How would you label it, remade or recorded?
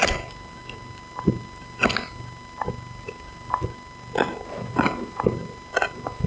recorded